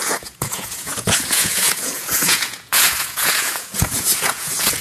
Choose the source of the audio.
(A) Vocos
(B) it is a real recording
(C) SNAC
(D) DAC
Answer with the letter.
A